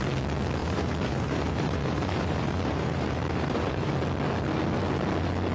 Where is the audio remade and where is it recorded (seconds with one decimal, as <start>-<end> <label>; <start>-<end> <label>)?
0.0-0.6 recorded; 0.6-3.9 remade; 3.9-5.5 recorded